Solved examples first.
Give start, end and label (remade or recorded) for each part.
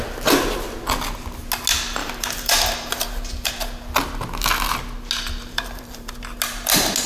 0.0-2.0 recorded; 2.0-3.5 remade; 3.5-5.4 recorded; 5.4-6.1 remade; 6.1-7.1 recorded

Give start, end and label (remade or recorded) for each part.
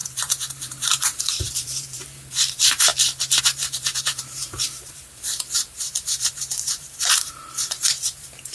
0.0-2.9 remade; 2.9-3.4 recorded; 3.4-8.5 remade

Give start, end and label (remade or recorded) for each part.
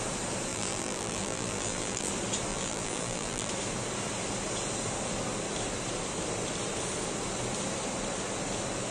0.0-0.5 recorded; 0.5-2.1 remade; 2.1-2.5 recorded; 2.5-3.5 remade; 3.5-8.9 recorded